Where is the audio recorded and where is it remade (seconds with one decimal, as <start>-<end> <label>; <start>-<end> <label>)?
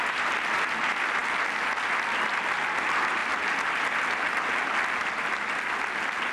0.0-6.3 recorded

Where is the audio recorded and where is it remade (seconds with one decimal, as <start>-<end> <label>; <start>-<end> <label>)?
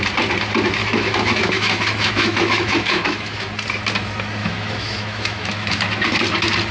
0.0-0.8 recorded; 0.8-3.5 remade; 3.5-4.4 recorded; 4.4-5.8 remade; 5.8-6.7 recorded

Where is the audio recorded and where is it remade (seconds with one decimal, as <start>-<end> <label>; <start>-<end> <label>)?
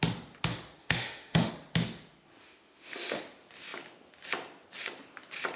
0.0-0.8 recorded; 0.8-1.5 remade; 1.5-2.4 recorded; 2.4-3.2 remade; 3.2-5.6 recorded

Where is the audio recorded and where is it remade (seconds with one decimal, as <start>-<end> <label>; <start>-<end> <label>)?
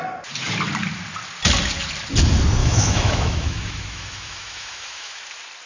0.0-2.6 recorded; 2.6-5.2 remade; 5.2-5.7 recorded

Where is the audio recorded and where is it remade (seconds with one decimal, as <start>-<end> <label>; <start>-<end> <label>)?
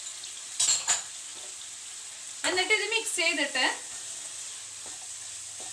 0.0-5.7 recorded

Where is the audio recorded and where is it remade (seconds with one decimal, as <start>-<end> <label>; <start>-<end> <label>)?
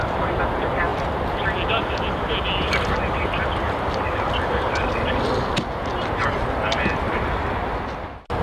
0.0-8.4 recorded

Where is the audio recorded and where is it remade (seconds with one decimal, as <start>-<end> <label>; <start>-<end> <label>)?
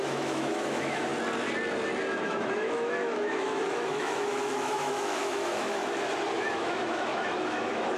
0.0-1.1 remade; 1.1-2.2 recorded; 2.2-5.8 remade; 5.8-6.4 recorded; 6.4-8.0 remade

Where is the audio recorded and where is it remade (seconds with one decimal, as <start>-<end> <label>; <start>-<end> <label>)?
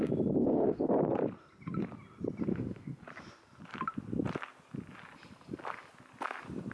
0.0-0.4 recorded; 0.4-0.9 remade; 0.9-2.5 recorded; 2.5-3.0 remade; 3.0-6.7 recorded